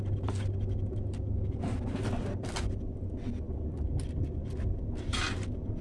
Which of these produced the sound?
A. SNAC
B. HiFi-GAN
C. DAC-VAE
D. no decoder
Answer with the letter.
D